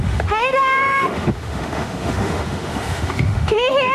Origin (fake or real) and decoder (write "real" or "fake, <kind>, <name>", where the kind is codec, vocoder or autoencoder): fake, autoencoder, DAC-VAE